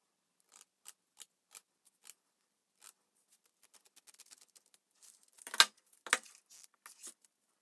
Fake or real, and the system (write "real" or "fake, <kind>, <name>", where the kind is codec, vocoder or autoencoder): real